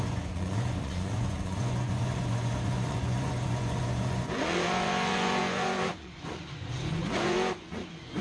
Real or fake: fake